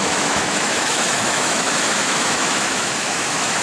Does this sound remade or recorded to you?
remade